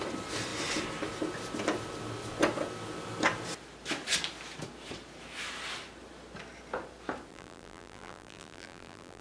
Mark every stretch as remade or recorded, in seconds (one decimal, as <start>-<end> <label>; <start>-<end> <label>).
0.0-7.3 recorded; 7.3-9.2 remade